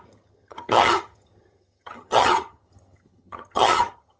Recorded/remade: remade